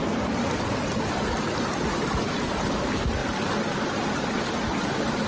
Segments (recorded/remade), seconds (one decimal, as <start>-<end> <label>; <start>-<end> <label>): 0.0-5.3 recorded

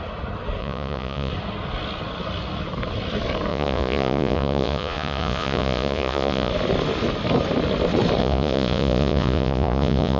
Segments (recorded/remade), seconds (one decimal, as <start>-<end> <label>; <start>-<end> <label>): 0.0-0.6 recorded; 0.6-1.3 remade; 1.3-3.5 recorded; 3.5-6.5 remade; 6.5-8.2 recorded; 8.2-10.2 remade

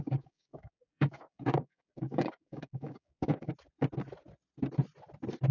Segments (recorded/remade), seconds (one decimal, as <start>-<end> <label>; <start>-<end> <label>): 0.0-3.5 remade; 3.5-5.5 recorded

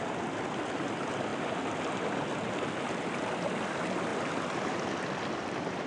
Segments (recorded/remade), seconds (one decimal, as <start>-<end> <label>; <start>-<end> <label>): 0.0-5.9 recorded

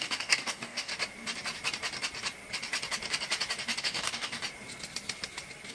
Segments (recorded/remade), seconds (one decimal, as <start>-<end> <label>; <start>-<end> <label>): 0.0-0.9 remade; 0.9-3.8 recorded; 3.8-4.4 remade; 4.4-5.7 recorded

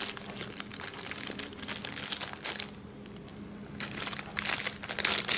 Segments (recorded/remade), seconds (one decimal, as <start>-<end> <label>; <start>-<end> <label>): 0.0-5.4 recorded